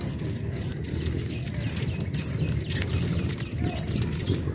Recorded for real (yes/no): yes